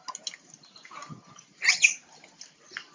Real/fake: real